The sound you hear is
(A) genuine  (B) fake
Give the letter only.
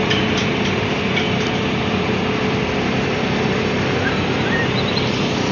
B